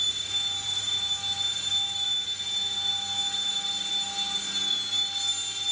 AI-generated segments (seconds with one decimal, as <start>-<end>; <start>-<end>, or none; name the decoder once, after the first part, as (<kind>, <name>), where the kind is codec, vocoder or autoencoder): none